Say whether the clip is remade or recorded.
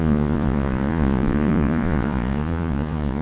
remade